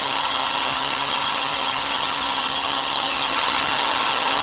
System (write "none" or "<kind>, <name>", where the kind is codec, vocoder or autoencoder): vocoder, HiFi-GAN